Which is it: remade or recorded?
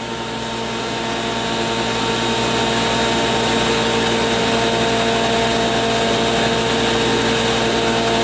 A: recorded